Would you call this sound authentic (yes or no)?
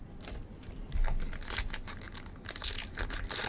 yes